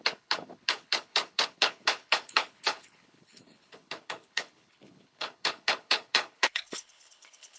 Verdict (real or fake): fake